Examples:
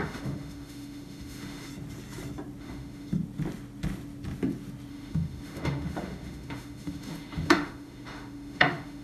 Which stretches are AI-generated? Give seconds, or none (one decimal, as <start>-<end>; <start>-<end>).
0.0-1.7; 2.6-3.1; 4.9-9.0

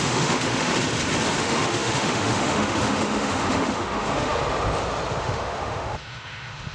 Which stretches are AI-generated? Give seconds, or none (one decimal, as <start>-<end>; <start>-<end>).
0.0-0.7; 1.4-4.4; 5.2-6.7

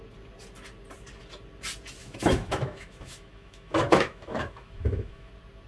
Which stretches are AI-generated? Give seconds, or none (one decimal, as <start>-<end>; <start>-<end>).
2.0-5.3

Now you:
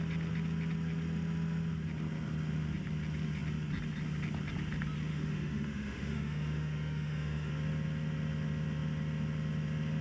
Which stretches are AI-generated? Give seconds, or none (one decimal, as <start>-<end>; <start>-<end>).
5.1-7.5

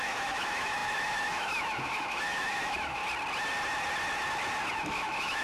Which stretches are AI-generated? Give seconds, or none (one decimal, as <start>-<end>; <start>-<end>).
0.0-3.0; 4.7-5.4

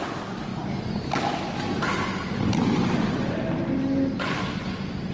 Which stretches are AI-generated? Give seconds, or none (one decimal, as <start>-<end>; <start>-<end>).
none

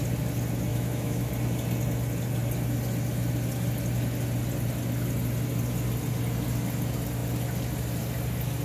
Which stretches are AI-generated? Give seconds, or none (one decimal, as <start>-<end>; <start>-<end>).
0.7-1.3